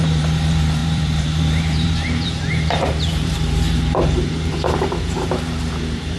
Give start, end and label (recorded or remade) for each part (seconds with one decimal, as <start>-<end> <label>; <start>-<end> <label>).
0.0-6.2 remade